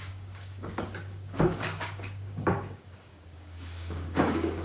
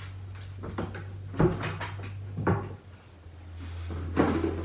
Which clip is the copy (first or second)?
first